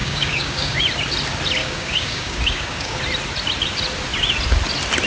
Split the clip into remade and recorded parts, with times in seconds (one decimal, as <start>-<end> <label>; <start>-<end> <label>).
0.0-0.8 remade; 0.8-1.6 recorded; 1.6-3.0 remade; 3.0-5.1 recorded